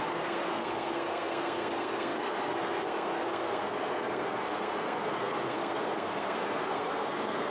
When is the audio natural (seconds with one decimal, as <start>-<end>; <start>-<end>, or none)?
none